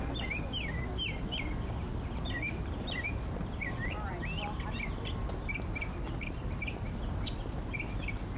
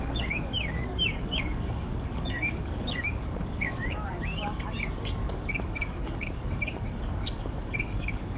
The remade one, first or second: second